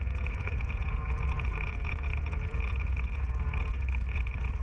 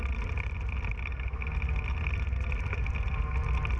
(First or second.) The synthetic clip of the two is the first